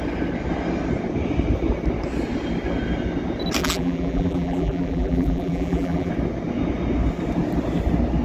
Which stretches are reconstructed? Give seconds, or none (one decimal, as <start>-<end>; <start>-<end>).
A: 3.6-6.1